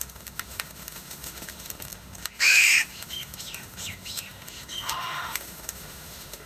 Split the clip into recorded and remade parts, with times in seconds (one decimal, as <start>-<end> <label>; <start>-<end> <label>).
0.0-6.5 remade